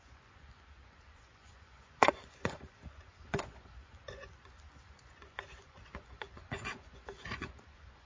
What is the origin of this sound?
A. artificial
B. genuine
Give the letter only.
A